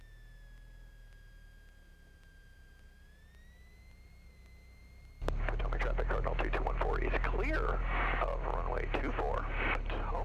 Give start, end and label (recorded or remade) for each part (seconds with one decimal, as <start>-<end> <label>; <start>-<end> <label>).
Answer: 0.0-10.2 recorded